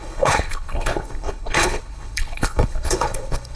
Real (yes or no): no